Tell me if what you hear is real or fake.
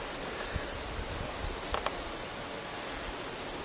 real